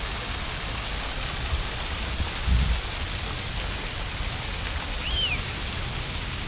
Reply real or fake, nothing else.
real